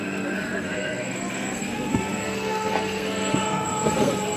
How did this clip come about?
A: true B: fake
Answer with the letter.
B